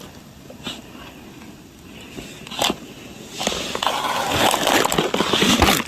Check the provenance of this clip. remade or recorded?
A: recorded